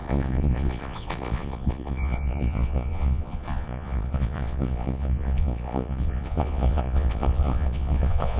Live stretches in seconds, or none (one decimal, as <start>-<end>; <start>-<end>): none